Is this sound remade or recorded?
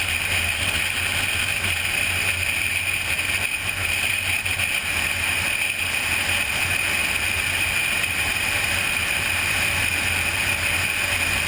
recorded